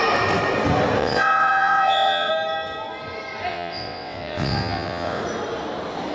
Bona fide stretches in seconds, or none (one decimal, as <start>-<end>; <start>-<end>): 0.0-1.0; 2.3-3.5; 5.2-6.1